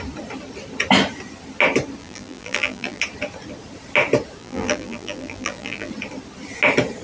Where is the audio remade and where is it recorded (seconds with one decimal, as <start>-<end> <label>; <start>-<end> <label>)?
0.0-2.0 recorded; 2.0-3.0 remade; 3.0-4.4 recorded; 4.4-5.9 remade; 5.9-7.0 recorded